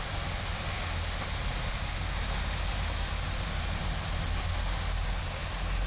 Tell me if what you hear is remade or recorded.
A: recorded